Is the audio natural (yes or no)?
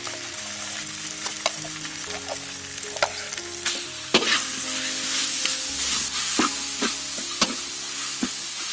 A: yes